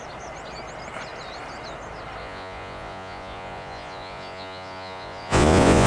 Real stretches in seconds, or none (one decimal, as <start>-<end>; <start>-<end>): 0.0-2.2